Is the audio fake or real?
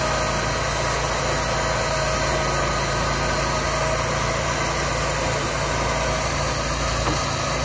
real